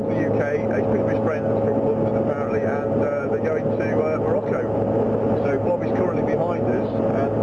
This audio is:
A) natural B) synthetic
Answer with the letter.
A